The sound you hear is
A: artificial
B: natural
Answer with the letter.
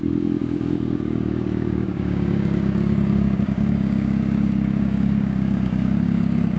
A